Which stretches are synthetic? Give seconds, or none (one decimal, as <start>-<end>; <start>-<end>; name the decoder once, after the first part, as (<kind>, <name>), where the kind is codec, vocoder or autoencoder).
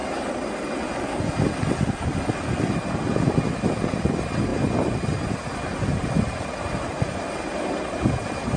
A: 5.7-7.2 (vocoder, BigVGAN v2)